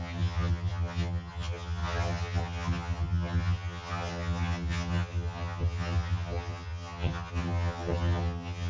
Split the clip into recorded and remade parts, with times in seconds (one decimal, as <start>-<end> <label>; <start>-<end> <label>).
0.0-8.7 remade